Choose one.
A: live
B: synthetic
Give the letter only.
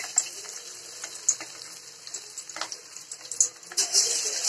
A